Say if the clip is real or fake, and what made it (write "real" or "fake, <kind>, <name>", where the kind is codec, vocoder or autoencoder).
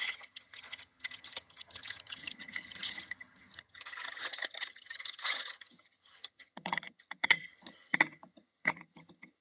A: fake, vocoder, HiFi-GAN